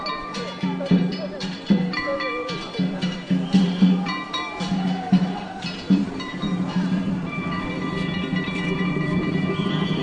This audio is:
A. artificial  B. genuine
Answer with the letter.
A